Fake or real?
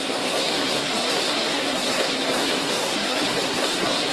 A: fake